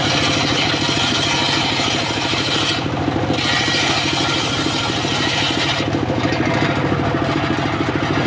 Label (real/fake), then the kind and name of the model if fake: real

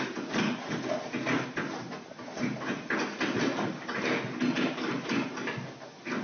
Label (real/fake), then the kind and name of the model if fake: real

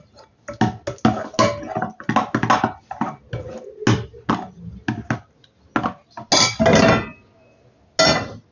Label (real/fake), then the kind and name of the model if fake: real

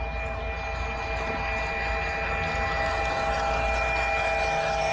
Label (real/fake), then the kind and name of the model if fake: real